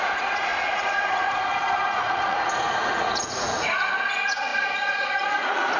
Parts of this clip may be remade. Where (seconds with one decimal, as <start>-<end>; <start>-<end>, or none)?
0.0-5.8